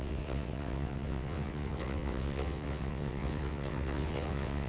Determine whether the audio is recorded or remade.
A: remade